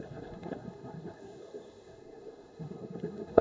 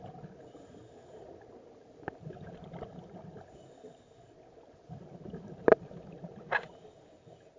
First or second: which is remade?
first